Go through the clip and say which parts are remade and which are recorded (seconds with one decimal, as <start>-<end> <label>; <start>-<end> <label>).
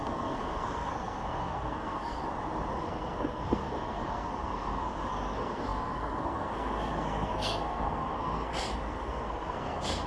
0.0-2.2 remade; 2.2-2.8 recorded; 2.8-10.1 remade